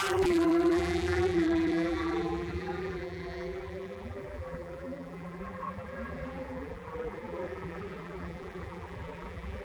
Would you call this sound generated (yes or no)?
yes